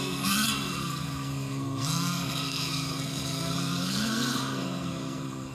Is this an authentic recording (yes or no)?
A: no